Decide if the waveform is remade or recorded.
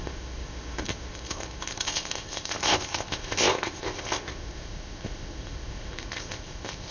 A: remade